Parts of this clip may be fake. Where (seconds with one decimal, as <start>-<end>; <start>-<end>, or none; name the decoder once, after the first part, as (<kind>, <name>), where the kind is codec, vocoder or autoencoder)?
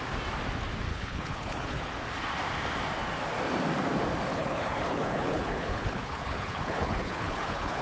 0.9-1.9 (codec, HILCodec); 4.3-7.8